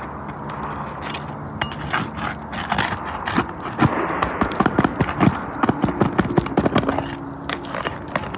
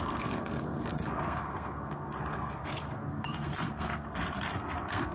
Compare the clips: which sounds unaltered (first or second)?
first